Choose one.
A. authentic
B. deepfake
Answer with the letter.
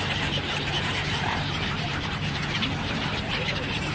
B